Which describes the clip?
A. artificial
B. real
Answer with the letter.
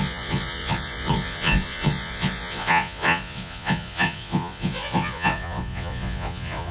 A